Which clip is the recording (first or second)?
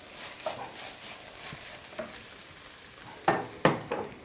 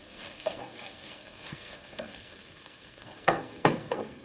first